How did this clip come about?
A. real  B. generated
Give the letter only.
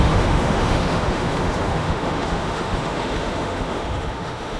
B